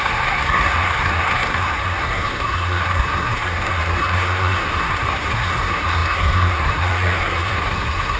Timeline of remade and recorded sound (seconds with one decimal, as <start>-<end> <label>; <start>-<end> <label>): 0.0-8.2 remade